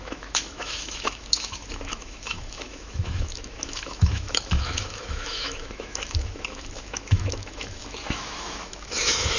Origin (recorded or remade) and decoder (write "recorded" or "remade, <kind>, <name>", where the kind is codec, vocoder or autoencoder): remade, autoencoder, DAC-VAE